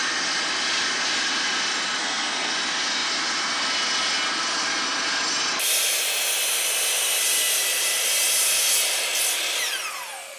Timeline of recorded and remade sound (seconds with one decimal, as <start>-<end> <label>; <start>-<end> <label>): 0.0-2.0 recorded; 2.0-2.5 remade; 2.5-10.4 recorded